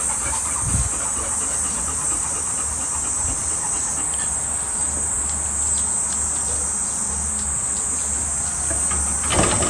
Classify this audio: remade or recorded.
recorded